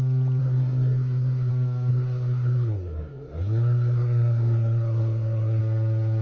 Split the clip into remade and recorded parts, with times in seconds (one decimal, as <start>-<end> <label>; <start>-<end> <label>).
0.0-0.4 recorded; 0.4-1.5 remade; 1.5-1.9 recorded; 1.9-5.6 remade; 5.6-6.2 recorded